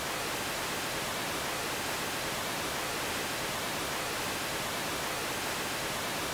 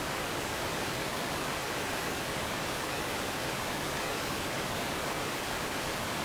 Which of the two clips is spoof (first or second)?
second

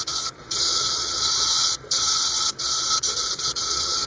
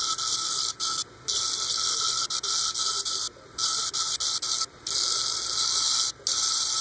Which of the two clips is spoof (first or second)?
first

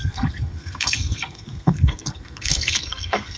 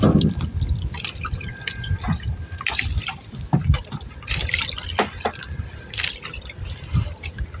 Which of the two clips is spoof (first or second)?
first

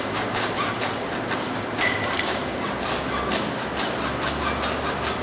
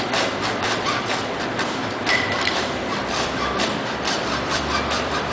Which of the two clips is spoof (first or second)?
second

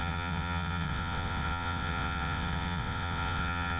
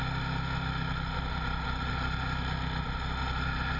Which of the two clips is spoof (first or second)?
first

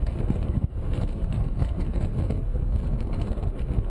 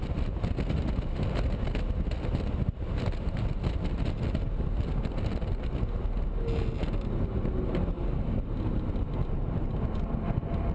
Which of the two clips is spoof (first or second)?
first